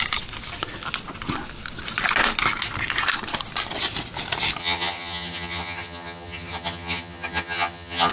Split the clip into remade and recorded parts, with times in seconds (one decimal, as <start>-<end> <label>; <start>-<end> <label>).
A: 0.0-4.6 recorded; 4.6-8.1 remade